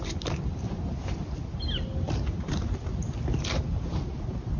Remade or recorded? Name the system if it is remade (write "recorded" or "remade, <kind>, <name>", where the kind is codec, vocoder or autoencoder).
recorded